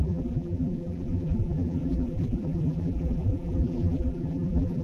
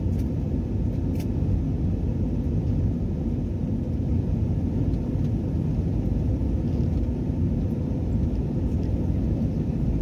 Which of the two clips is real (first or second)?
second